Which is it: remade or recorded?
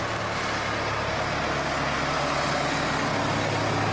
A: recorded